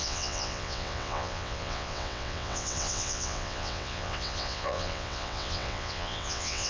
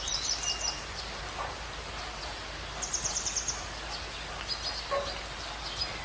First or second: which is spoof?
first